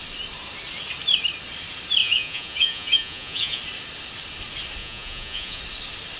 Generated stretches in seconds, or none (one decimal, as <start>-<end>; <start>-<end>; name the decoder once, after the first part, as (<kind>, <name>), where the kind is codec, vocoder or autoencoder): 2.0-3.6 (vocoder, Vocos); 4.8-5.6